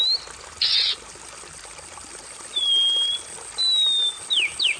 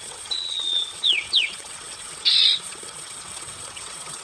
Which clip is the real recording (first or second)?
first